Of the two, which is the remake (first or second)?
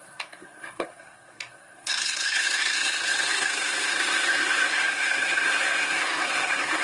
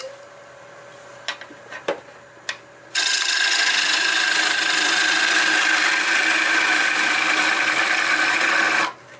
first